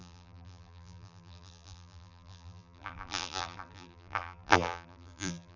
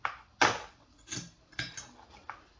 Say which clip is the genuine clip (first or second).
second